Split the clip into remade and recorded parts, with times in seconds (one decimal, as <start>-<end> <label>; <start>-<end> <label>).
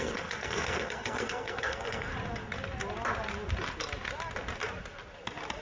0.0-2.1 remade; 2.1-5.6 recorded